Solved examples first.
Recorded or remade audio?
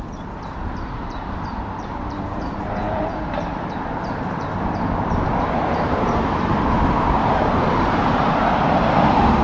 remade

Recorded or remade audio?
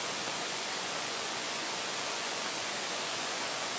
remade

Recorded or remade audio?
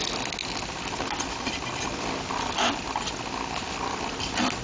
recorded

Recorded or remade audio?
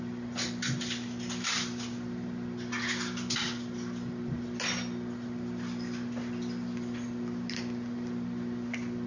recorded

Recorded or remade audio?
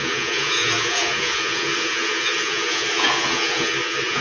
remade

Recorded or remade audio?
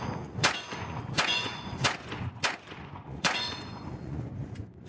remade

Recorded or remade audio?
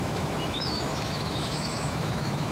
remade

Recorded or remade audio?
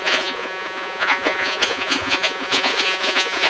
remade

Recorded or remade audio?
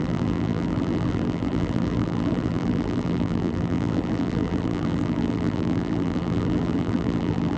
remade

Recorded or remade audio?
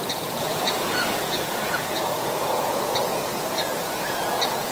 remade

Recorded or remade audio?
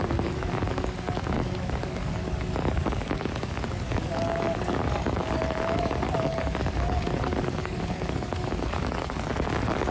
remade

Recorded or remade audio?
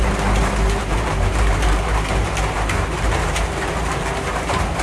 remade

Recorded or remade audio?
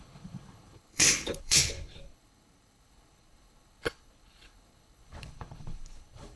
remade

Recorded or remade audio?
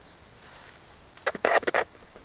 remade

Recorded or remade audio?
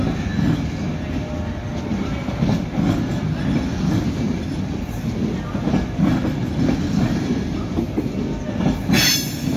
recorded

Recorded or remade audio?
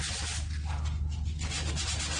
recorded